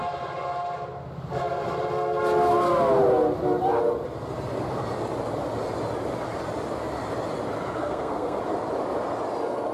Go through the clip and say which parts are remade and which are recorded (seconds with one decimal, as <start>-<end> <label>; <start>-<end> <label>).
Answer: 0.0-7.8 recorded; 7.8-8.4 remade; 8.4-9.7 recorded